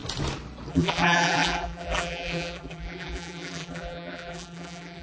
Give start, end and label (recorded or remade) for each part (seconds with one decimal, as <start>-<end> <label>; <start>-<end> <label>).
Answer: 0.0-0.7 recorded; 0.7-5.0 remade